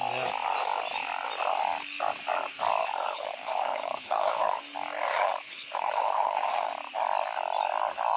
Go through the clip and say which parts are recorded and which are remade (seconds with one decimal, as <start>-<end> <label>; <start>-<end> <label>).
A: 0.0-2.8 recorded; 2.8-4.6 remade; 4.6-5.1 recorded; 5.1-6.7 remade; 6.7-8.2 recorded